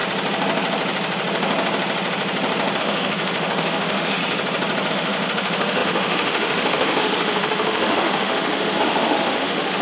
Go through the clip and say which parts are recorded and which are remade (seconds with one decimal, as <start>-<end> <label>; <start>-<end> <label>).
0.0-2.8 recorded; 2.8-4.2 remade; 4.2-4.9 recorded; 4.9-9.8 remade